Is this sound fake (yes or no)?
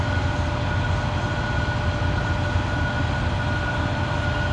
no